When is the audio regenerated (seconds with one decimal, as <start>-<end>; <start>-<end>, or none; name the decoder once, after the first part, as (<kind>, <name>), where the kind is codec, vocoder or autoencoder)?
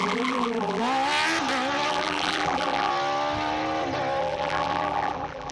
0.0-0.8 (vocoder, BigVGAN v2); 1.9-2.9; 4.2-5.5